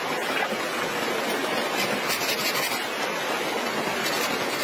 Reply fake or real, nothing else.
real